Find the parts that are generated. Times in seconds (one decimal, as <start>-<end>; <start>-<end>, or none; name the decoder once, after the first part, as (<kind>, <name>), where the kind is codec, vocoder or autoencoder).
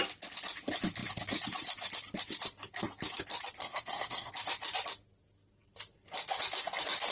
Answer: 3.6-4.3 (codec, SNAC)